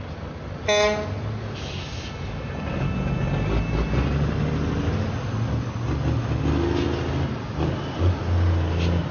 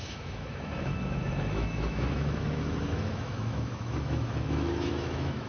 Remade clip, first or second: second